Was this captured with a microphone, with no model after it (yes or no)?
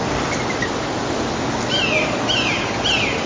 yes